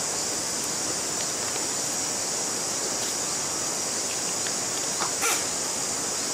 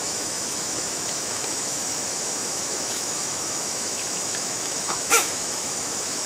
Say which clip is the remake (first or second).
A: second